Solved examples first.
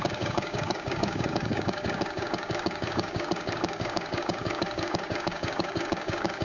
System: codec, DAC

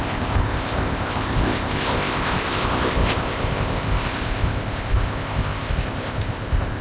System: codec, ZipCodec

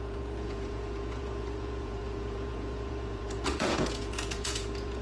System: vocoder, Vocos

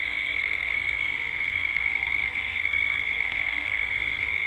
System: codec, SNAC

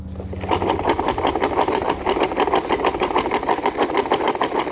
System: none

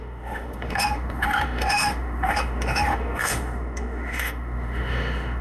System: autoencoder, DAC-VAE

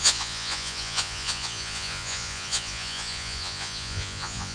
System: vocoder, Vocos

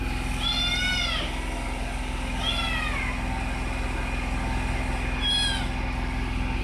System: none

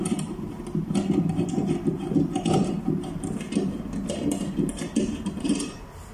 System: none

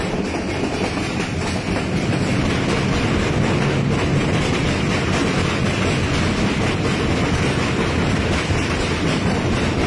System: none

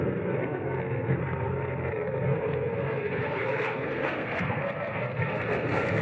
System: codec, SNAC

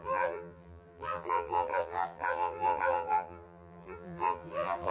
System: vocoder, BigVGAN v2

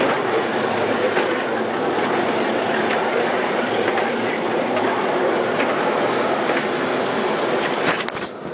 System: none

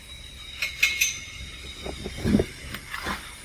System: none